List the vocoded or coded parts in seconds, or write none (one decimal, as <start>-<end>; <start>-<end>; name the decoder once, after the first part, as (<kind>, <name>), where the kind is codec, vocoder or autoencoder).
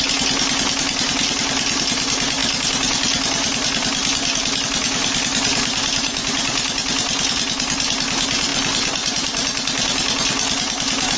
none